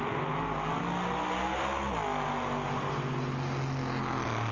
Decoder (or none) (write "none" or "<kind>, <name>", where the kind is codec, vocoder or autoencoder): none